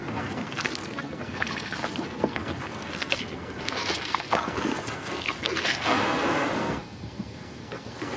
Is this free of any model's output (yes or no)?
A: no